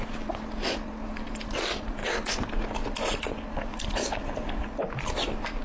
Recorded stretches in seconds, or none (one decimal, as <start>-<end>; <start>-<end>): 0.0-5.6